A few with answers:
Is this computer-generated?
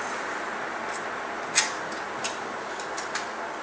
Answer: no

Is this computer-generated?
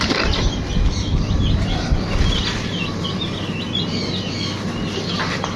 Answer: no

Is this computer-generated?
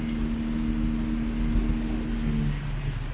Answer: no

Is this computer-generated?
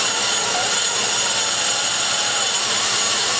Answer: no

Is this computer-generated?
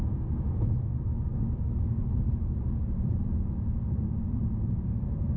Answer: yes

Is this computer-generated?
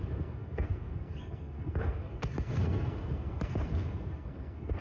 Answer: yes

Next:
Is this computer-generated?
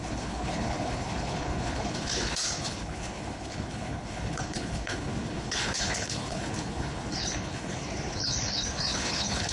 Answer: yes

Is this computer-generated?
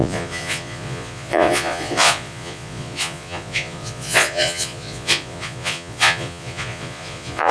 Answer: yes